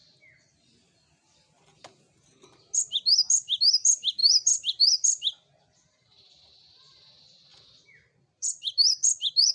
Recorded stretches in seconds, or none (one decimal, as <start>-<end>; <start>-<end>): 0.0-4.2; 6.2-7.5